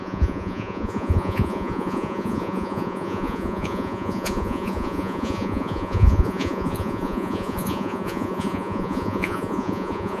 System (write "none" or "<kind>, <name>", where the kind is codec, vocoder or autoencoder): vocoder, Vocos